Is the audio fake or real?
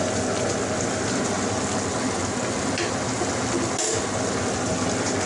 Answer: real